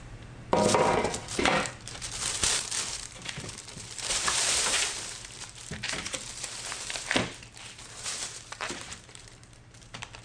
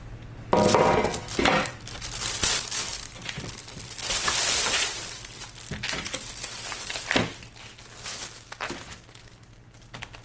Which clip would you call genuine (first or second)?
second